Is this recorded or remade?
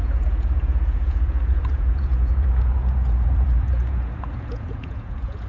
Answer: remade